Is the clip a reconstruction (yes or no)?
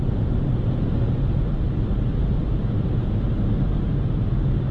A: no